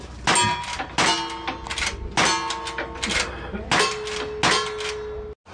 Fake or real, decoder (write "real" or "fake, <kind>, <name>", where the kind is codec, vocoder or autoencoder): real